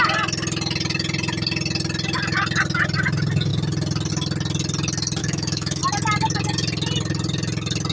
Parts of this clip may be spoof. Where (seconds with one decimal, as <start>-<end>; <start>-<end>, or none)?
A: 5.2-5.8